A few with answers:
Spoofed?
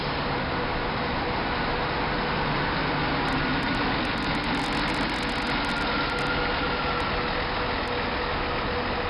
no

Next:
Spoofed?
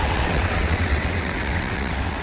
yes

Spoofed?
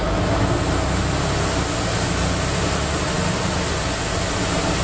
no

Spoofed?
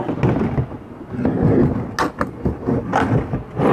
no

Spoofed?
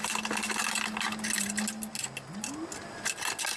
no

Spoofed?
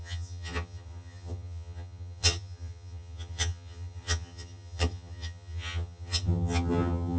yes